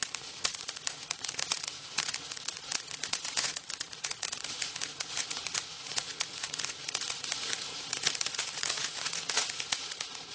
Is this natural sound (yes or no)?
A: no